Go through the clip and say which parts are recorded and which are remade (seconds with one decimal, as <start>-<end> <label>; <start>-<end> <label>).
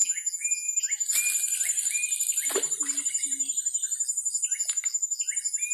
0.0-0.8 remade; 0.8-5.7 recorded